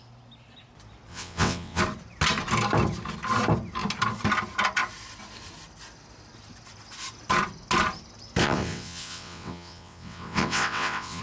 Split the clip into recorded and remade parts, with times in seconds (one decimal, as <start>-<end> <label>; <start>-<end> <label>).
0.0-1.1 recorded; 1.1-1.8 remade; 1.8-8.4 recorded; 8.4-11.2 remade

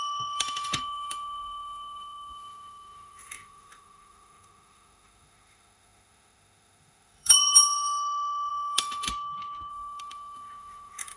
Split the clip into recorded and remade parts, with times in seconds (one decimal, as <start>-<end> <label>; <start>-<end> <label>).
0.0-9.1 remade; 9.1-9.7 recorded; 9.7-11.2 remade

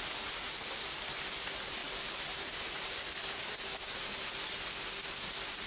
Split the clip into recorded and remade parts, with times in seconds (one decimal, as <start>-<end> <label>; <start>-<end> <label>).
0.0-5.7 recorded